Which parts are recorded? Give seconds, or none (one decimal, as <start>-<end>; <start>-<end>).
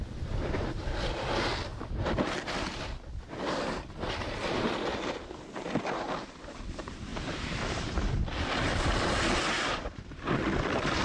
0.0-11.0